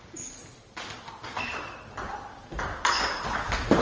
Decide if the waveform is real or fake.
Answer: real